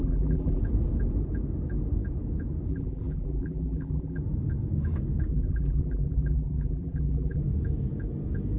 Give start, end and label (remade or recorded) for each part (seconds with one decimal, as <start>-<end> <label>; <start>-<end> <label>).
0.0-0.6 remade; 0.6-2.7 recorded; 2.7-4.2 remade; 4.2-5.3 recorded; 5.3-7.4 remade; 7.4-8.6 recorded